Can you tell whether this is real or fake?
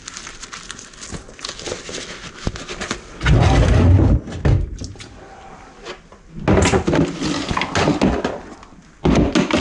real